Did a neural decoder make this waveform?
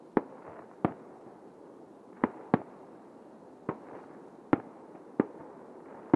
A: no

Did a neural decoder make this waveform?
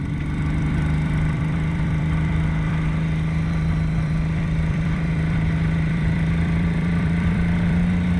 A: yes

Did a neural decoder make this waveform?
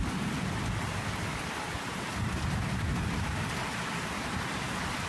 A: no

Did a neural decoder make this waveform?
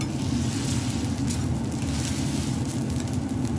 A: no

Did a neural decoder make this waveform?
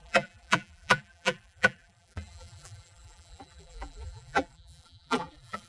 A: yes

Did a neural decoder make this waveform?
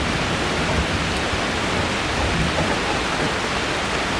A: no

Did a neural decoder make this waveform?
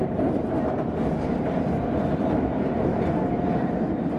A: no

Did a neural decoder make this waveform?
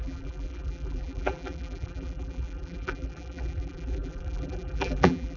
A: yes